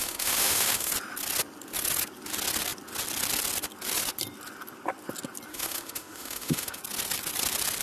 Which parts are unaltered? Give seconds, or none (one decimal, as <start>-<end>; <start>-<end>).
0.9-5.5; 6.8-7.8